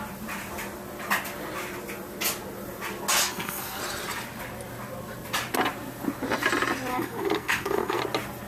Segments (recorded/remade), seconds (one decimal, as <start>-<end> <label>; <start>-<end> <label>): 0.0-3.2 recorded; 3.2-3.8 remade; 3.8-6.9 recorded; 6.9-8.0 remade; 8.0-8.5 recorded